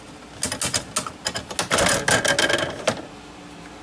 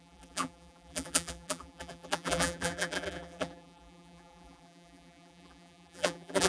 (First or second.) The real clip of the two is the first